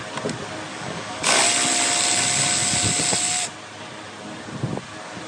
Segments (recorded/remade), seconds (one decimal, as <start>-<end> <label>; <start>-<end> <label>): 0.0-0.7 recorded; 0.7-1.4 remade; 1.4-5.3 recorded

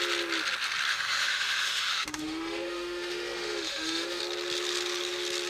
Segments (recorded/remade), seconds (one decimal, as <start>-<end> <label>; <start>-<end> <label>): 0.0-0.9 recorded; 0.9-4.2 remade; 4.2-5.5 recorded

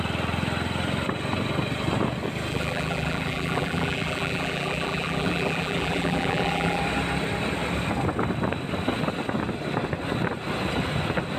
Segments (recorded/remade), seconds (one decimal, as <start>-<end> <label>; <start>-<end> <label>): 0.0-2.5 recorded; 2.5-6.8 remade; 6.8-11.4 recorded

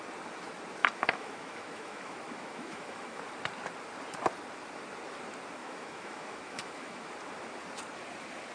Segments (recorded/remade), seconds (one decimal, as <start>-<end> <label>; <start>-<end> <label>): 0.0-0.8 recorded; 0.8-3.2 remade; 3.2-5.6 recorded; 5.6-7.1 remade; 7.1-8.5 recorded

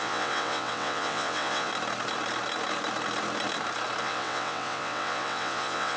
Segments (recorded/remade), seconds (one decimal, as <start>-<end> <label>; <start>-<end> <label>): 0.0-1.7 remade; 1.7-4.0 recorded; 4.0-6.0 remade

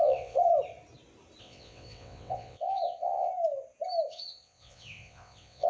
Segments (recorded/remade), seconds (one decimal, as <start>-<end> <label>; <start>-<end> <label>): 0.0-0.5 remade; 0.5-1.4 recorded; 1.4-3.3 remade; 3.3-4.1 recorded; 4.1-5.7 remade